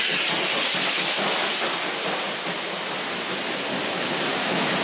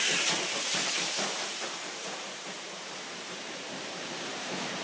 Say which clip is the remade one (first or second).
second